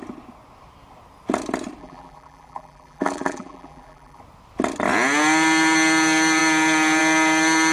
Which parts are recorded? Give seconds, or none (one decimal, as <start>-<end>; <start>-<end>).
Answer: 0.0-1.8; 4.2-7.7